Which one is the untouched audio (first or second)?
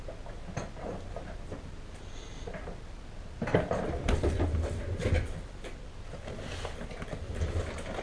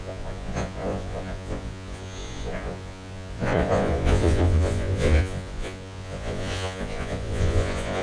first